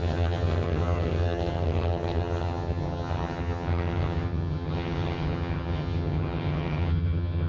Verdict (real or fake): fake